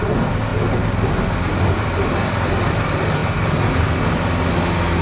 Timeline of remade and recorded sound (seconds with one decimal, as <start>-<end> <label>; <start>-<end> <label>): 0.0-5.0 recorded